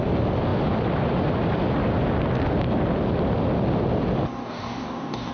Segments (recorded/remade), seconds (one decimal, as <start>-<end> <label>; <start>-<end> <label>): 0.0-4.4 recorded; 4.4-5.3 remade